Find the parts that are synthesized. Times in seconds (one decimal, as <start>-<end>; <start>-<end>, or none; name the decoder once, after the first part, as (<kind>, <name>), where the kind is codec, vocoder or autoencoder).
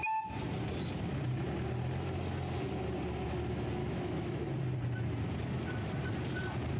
3.8-4.5 (autoencoder, DAC-VAE)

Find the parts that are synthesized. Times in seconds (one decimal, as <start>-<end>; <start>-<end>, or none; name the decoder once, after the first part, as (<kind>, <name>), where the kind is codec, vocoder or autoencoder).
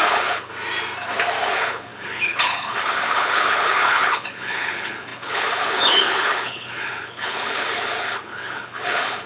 0.0-0.5 (codec, HILCodec); 1.4-9.3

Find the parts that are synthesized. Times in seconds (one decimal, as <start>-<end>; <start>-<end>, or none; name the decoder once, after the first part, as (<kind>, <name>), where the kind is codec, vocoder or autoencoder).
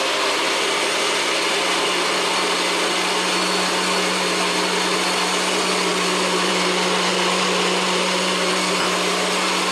none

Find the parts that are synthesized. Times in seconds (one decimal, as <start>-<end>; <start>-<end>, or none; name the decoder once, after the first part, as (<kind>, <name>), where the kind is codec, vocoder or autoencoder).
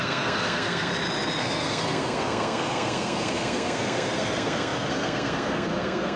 0.0-0.9 (codec, SNAC); 1.4-6.2